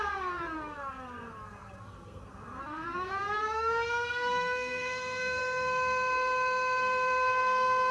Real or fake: fake